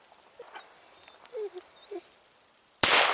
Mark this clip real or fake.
real